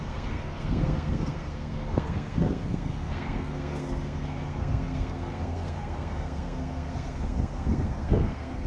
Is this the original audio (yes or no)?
no